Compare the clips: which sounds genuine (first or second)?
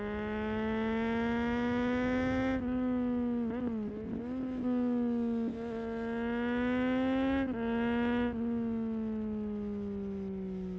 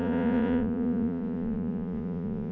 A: first